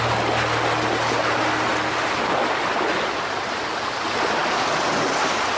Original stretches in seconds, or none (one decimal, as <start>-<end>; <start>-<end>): 0.0-5.6